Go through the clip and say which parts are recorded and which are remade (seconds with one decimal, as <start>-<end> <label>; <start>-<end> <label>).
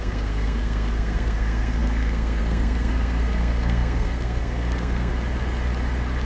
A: 0.0-5.1 remade; 5.1-6.3 recorded